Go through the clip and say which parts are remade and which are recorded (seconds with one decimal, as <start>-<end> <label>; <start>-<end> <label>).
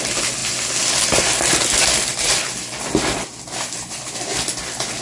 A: 0.0-5.0 recorded